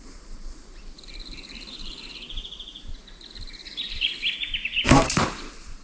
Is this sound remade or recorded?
remade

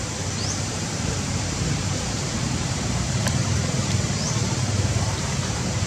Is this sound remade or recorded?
remade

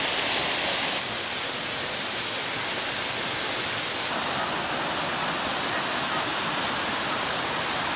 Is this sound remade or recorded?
recorded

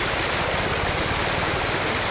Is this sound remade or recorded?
recorded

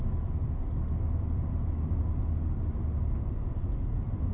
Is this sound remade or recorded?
recorded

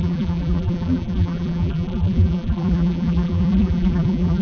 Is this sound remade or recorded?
remade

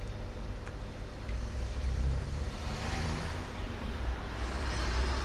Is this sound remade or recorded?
remade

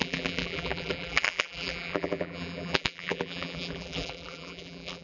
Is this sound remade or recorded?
remade